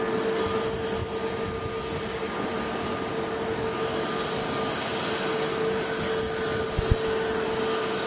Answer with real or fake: real